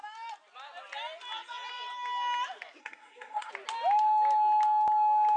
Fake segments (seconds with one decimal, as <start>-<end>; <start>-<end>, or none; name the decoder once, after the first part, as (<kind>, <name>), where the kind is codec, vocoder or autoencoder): 2.8-3.5 (codec, SNAC)